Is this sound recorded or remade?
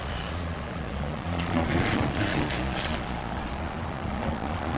remade